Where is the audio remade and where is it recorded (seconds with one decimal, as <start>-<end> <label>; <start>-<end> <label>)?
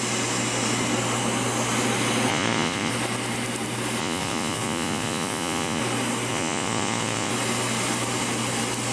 0.0-2.3 recorded; 2.3-2.9 remade; 2.9-4.0 recorded; 4.0-5.8 remade; 5.8-6.3 recorded; 6.3-7.3 remade; 7.3-8.9 recorded